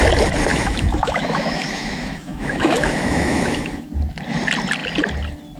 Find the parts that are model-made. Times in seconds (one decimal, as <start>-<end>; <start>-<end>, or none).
0.5-3.9